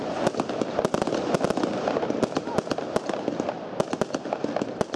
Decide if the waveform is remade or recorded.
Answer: recorded